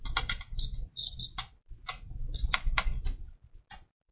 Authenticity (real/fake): fake